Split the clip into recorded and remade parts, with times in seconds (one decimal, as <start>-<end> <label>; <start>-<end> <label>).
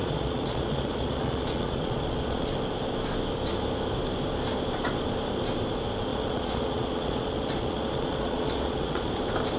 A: 0.0-2.5 remade; 2.5-6.1 recorded; 6.1-9.1 remade; 9.1-9.6 recorded